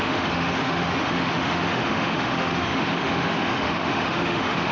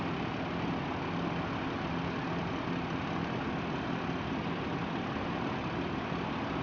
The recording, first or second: second